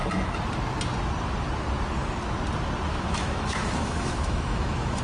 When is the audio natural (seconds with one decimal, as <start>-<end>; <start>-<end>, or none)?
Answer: 0.0-2.9